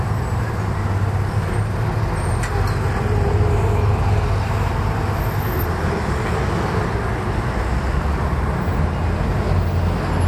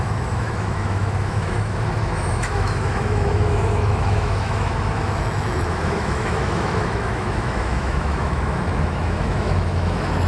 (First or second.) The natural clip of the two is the first